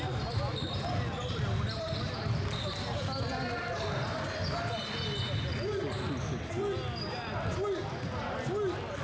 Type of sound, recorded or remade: recorded